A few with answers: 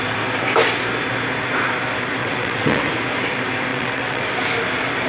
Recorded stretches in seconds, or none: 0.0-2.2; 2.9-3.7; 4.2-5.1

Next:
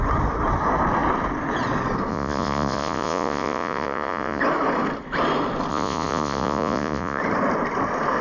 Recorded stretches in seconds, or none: 0.0-2.1; 4.4-5.7; 7.2-8.2

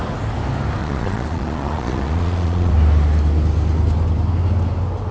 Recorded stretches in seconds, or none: 0.0-0.8; 2.7-5.1